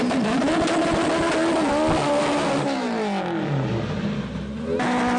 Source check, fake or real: real